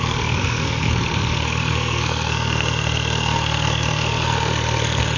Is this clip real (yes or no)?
no